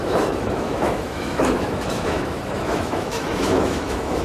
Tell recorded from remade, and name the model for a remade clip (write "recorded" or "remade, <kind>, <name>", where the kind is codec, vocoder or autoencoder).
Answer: remade, autoencoder, DAC-VAE